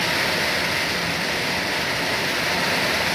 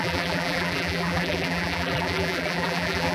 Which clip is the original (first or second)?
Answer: first